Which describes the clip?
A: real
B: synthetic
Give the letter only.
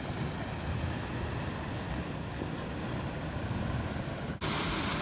A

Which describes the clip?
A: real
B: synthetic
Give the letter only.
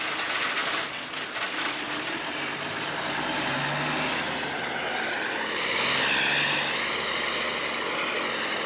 A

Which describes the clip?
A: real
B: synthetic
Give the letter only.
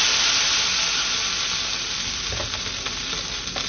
A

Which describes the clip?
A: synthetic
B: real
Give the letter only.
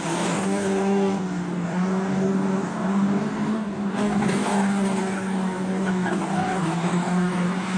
A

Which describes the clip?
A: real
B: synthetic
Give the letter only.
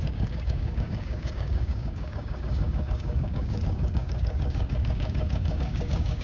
B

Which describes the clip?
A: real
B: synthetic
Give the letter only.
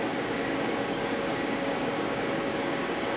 B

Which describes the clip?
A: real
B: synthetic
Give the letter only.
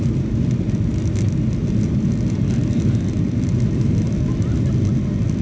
A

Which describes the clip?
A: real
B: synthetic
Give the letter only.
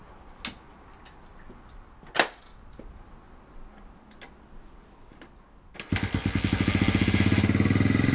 A